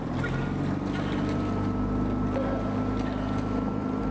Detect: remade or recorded recorded